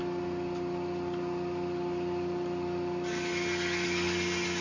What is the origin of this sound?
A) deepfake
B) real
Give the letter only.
B